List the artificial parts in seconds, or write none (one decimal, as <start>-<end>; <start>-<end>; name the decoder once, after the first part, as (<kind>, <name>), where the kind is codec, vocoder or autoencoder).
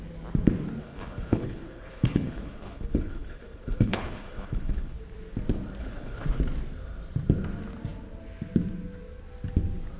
0.8-5.0 (codec, HILCodec); 5.8-6.4